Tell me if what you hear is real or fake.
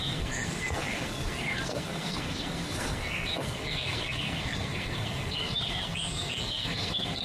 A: fake